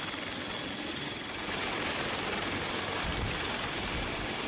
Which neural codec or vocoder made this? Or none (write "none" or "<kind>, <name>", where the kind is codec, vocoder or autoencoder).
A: none